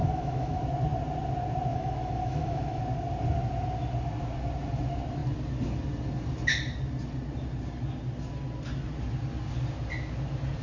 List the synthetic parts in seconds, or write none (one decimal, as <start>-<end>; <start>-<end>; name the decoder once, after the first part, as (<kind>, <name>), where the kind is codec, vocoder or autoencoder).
0.0-0.6 (autoencoder, DAC-VAE); 1.7-2.8